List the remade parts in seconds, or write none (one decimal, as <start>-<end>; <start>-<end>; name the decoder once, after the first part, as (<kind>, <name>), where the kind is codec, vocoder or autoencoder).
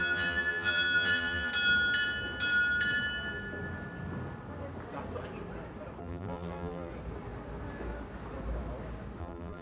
0.0-1.5 (vocoder, BigVGAN v2); 6.0-6.9; 9.2-9.6